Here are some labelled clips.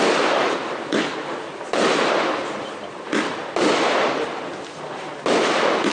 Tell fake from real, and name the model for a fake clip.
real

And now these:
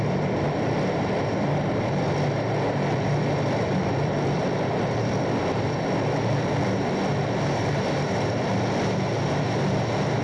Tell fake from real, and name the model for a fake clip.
fake, vocoder, BigVGAN v2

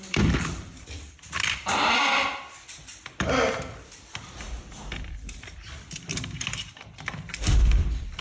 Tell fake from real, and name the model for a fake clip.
fake, vocoder, BigVGAN v2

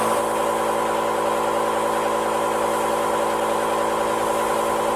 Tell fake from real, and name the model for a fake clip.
real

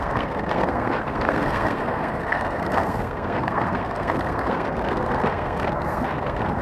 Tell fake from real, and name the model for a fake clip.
fake, codec, SNAC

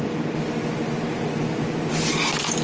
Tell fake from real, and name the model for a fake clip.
real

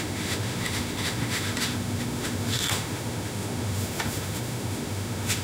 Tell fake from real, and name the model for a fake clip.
fake, autoencoder, DAC-VAE